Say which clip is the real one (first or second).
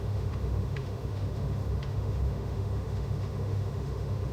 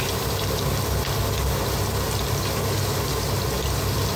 second